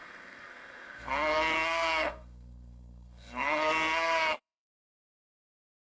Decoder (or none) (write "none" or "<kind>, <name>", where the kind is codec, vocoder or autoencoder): codec, SNAC